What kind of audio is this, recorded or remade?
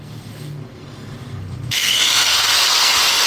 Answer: remade